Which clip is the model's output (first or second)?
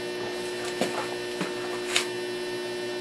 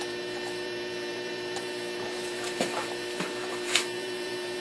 second